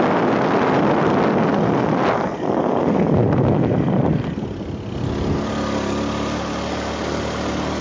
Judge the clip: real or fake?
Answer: real